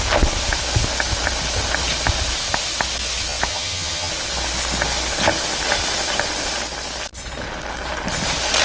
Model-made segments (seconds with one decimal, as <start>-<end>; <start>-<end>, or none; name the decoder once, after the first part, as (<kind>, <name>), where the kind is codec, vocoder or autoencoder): 3.5-4.1 (vocoder, HiFi-GAN)